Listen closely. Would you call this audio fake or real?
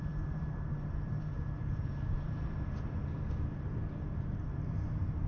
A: fake